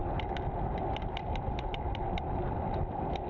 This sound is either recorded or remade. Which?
recorded